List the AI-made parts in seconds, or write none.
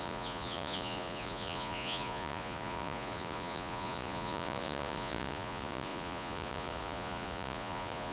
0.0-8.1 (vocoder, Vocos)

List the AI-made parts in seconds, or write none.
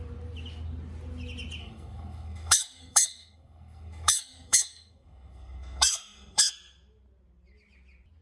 1.6-6.5 (codec, SNAC)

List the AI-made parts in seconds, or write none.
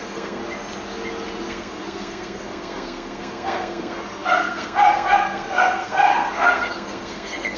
0.0-0.4 (codec, SNAC); 1.5-7.6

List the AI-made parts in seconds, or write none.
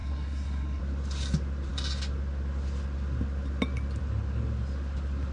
0.0-0.8 (codec, SNAC)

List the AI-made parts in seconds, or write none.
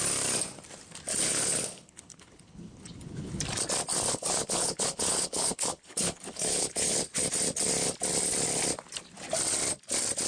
1.1-3.4 (codec, HILCodec); 3.9-7.0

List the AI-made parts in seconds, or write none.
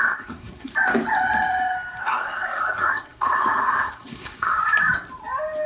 0.0-0.7 (codec, SNAC); 2.0-4.6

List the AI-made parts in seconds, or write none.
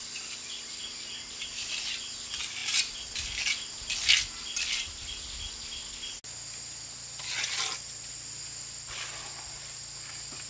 none